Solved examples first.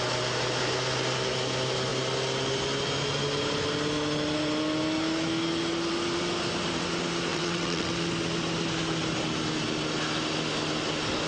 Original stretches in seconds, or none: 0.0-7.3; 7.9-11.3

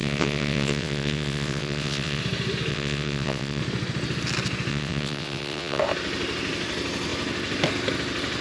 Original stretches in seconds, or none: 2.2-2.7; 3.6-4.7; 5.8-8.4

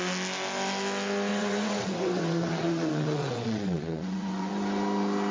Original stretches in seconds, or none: 0.0-1.3; 4.5-5.3

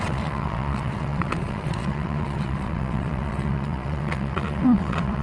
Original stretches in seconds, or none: none

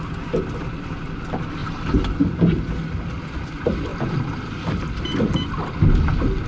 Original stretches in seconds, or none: 0.0-6.5

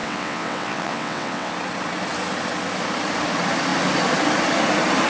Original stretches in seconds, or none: 1.5-5.1

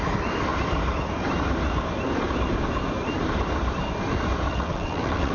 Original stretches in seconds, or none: 0.0-4.5

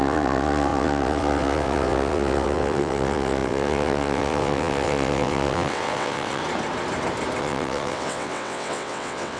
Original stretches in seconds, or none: 6.4-7.4